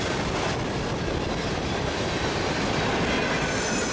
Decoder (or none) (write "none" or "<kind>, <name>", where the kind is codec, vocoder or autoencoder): none